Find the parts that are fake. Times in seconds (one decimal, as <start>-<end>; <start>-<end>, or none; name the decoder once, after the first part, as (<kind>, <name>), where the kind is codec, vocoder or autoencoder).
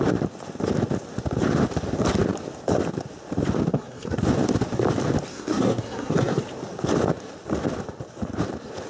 3.7-4.2 (codec, SNAC); 5.3-6.4